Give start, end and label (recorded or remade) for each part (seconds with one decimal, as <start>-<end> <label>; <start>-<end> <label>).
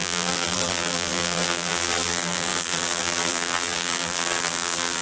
0.0-5.0 remade